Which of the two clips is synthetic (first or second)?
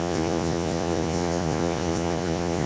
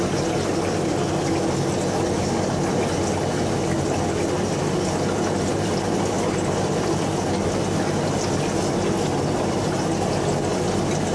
first